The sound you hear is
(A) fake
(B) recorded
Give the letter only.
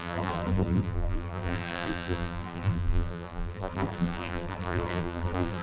A